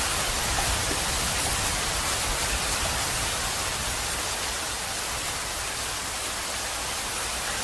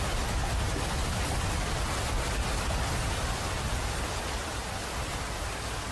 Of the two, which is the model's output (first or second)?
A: first